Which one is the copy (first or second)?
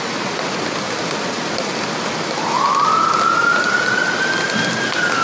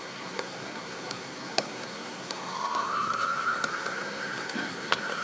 second